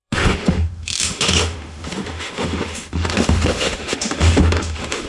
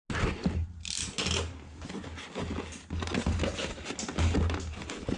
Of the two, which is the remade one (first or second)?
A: first